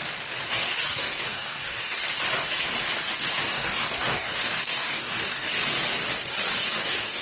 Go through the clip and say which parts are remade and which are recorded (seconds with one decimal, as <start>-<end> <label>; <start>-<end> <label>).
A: 0.0-0.5 recorded; 0.5-2.0 remade; 2.0-3.5 recorded; 3.5-5.6 remade; 5.6-6.7 recorded; 6.7-7.2 remade